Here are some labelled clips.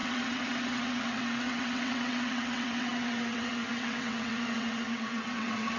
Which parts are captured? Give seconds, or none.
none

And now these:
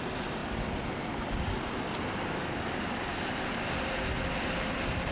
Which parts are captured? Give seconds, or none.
0.0-5.1

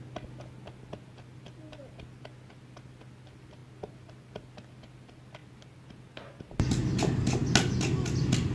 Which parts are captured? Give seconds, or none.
0.0-8.5